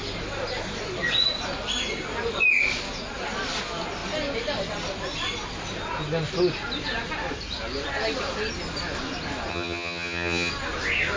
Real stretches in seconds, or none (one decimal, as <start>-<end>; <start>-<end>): 0.0-9.5; 10.5-11.2